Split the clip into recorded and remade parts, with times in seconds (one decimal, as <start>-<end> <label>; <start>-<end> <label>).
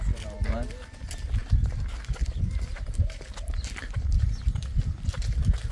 0.0-5.7 recorded